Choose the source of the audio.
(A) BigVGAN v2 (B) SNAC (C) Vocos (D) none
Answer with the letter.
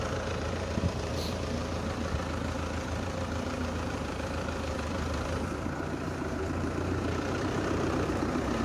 A